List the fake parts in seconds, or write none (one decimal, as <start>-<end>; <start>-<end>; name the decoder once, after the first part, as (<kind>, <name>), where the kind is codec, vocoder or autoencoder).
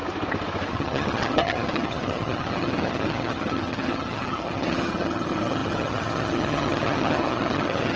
0.7-8.0 (vocoder, HiFi-GAN)